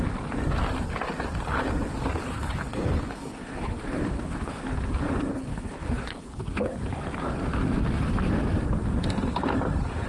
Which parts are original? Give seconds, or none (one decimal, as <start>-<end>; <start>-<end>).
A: 0.0-2.2; 4.6-5.3; 6.7-10.1